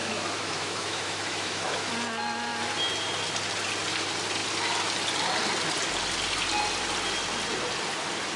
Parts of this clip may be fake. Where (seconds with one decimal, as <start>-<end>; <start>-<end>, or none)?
0.0-1.9